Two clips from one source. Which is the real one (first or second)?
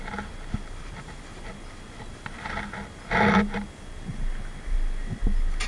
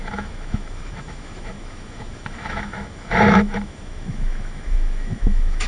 first